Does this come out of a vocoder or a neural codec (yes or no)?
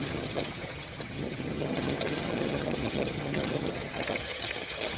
yes